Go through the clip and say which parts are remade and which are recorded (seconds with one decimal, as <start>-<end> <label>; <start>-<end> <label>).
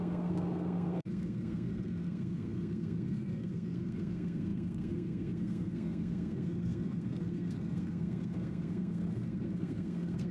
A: 0.0-10.3 remade